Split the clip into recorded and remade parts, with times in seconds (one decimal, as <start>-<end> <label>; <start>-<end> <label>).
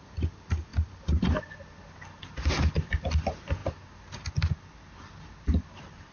0.0-6.1 recorded